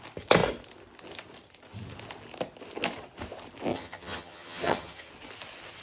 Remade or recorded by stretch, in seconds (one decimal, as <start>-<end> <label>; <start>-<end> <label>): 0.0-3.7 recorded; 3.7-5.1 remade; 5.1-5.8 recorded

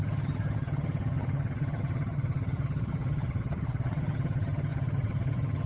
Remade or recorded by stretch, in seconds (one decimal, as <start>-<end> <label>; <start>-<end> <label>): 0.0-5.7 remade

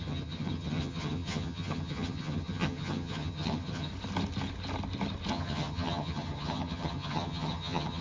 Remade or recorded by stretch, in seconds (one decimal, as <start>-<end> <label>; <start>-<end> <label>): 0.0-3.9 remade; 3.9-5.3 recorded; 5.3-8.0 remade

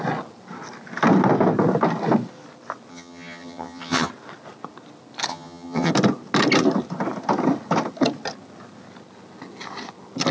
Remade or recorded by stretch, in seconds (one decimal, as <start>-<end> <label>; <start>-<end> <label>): 0.0-2.9 recorded; 2.9-4.1 remade; 4.1-5.3 recorded; 5.3-5.9 remade; 5.9-10.3 recorded